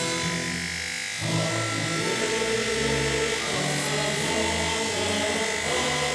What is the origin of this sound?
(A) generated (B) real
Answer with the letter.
B